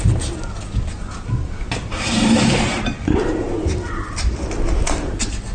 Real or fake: real